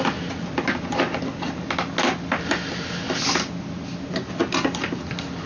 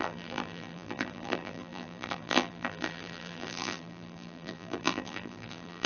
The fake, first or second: second